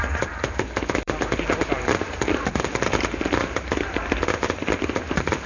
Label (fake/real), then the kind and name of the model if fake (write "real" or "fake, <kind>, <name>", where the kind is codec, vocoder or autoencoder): fake, vocoder, BigVGAN v2